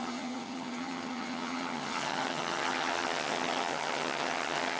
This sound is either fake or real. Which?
fake